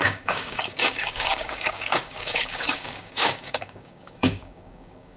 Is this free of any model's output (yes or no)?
no